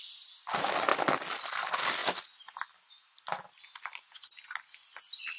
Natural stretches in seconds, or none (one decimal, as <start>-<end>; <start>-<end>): 0.0-5.4